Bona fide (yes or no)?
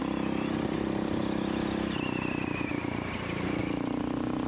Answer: yes